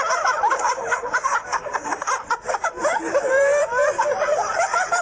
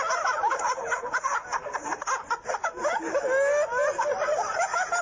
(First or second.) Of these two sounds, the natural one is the second